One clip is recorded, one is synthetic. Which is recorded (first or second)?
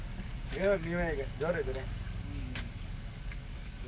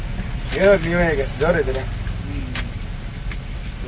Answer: second